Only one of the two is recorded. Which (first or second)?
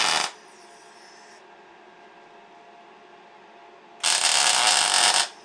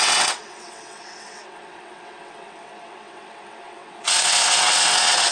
first